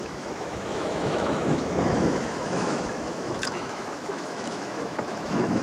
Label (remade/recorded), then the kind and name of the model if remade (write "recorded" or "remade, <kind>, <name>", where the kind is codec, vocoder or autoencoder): remade, autoencoder, DAC-VAE